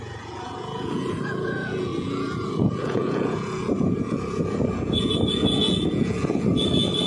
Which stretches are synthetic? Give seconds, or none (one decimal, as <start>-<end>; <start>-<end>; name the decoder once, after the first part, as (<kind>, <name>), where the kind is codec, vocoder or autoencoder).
0.0-7.1 (vocoder, Vocos)